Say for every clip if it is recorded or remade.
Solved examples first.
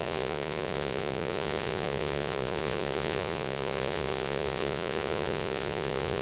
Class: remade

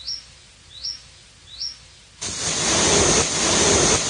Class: recorded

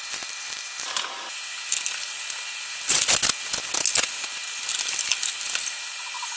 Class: recorded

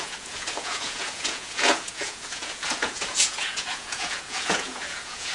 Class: remade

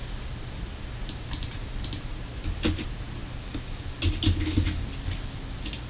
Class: recorded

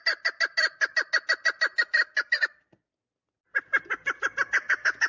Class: recorded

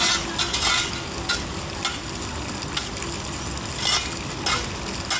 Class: recorded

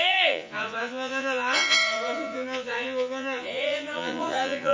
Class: remade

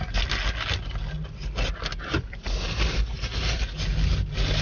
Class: recorded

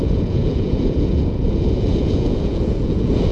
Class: remade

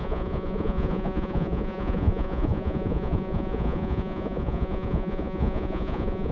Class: remade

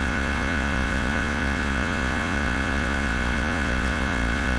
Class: remade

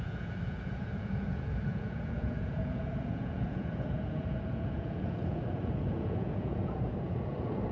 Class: remade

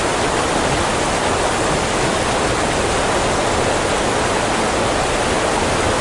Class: recorded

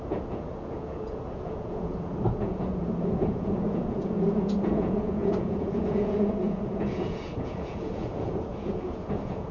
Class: remade